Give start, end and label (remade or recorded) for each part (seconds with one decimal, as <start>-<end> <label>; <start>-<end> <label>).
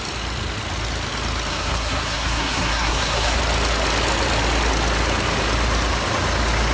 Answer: 0.0-1.5 recorded; 1.5-3.4 remade; 3.4-6.7 recorded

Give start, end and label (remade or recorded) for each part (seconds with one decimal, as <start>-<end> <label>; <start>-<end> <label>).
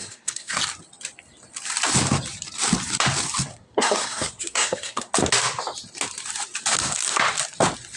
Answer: 0.0-0.6 remade; 0.6-3.5 recorded; 3.5-5.1 remade; 5.1-8.0 recorded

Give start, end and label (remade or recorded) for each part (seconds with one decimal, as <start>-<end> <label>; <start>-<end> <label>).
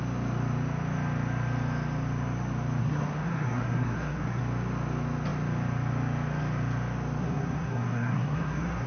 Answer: 0.0-2.8 recorded; 2.8-4.4 remade; 4.4-7.2 recorded; 7.2-8.9 remade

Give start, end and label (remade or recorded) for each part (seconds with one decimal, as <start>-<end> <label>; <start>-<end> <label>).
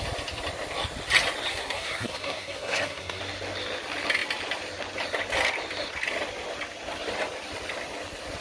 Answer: 0.0-1.5 recorded; 1.5-3.2 remade; 3.2-8.4 recorded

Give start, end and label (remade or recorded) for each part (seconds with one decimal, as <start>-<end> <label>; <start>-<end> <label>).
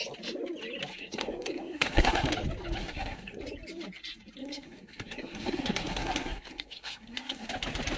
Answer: 0.0-0.9 recorded; 0.9-2.3 remade; 2.3-2.8 recorded; 2.8-3.4 remade; 3.4-4.4 recorded; 4.4-7.5 remade; 7.5-8.0 recorded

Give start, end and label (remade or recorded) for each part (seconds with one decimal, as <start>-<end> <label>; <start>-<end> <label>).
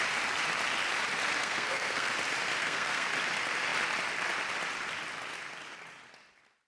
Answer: 0.0-1.4 recorded; 1.4-2.1 remade; 2.1-2.6 recorded; 2.6-3.1 remade; 3.1-6.7 recorded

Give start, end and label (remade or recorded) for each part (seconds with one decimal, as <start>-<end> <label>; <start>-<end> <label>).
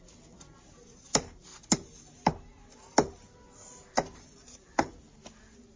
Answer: 0.0-5.8 recorded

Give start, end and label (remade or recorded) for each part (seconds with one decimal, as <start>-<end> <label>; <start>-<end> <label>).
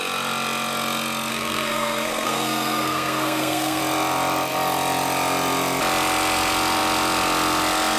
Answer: 0.0-1.3 recorded; 1.3-3.8 remade; 3.8-8.0 recorded